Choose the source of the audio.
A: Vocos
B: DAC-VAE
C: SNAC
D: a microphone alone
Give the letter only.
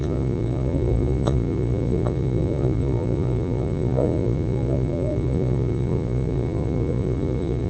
A